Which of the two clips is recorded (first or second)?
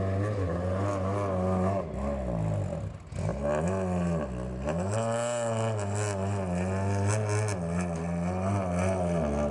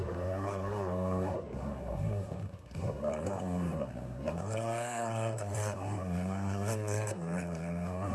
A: first